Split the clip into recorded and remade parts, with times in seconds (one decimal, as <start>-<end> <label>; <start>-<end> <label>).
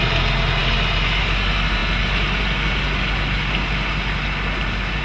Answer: 0.0-5.0 recorded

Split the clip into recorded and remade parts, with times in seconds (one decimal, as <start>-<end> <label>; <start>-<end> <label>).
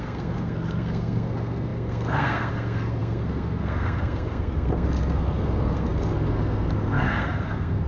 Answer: 0.0-7.9 remade